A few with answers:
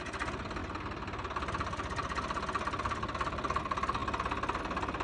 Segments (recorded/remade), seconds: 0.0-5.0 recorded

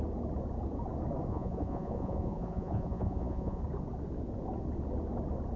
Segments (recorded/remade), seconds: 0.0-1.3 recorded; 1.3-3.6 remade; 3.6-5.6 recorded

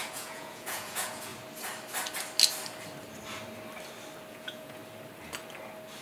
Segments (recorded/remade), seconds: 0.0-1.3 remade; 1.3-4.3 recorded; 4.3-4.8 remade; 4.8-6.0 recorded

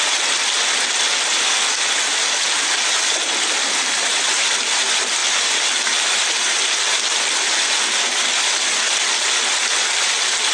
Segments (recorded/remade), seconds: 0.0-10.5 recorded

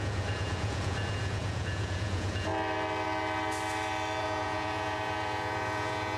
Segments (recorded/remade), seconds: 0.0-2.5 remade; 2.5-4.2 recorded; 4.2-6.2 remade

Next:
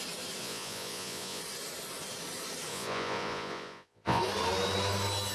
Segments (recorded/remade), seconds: 0.0-0.4 recorded; 0.4-1.4 remade; 1.4-2.7 recorded; 2.7-4.2 remade; 4.2-5.3 recorded

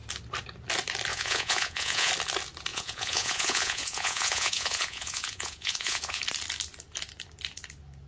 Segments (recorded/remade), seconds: 0.0-1.1 recorded; 1.1-2.1 remade; 2.1-2.7 recorded; 2.7-6.2 remade; 6.2-8.1 recorded